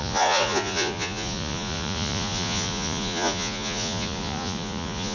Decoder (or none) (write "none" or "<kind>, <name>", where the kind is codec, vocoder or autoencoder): vocoder, Vocos